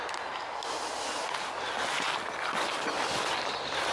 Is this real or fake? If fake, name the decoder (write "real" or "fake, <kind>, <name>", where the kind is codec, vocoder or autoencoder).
real